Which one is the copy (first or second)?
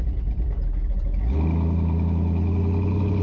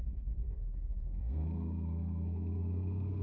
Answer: second